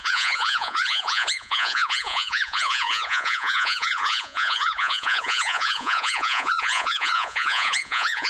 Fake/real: fake